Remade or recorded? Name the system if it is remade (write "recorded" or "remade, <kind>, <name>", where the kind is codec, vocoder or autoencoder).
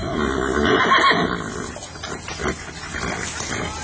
recorded